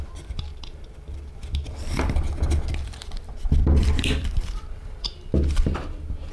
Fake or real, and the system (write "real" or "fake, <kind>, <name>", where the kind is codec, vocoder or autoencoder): fake, vocoder, BigVGAN v2